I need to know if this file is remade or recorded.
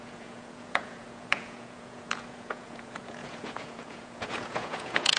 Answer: remade